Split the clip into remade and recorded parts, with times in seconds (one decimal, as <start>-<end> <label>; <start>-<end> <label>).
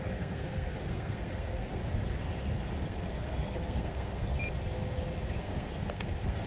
0.0-1.8 remade; 1.8-2.8 recorded; 2.8-4.3 remade; 4.3-5.3 recorded; 5.3-6.5 remade